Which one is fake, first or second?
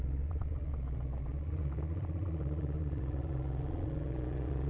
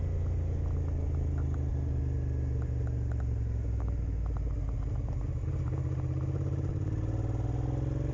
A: first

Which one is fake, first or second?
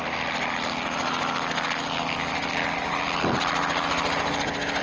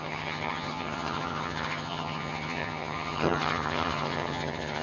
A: second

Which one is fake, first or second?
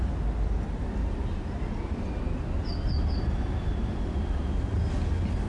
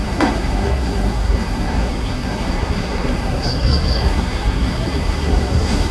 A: second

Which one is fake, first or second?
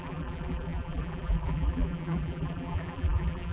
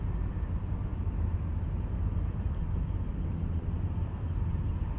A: first